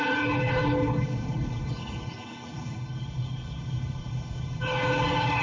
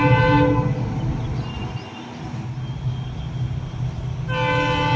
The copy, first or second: first